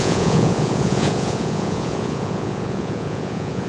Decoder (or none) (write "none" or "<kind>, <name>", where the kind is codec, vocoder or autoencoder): vocoder, Vocos